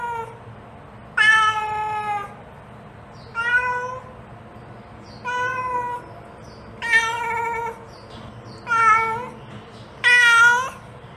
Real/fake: real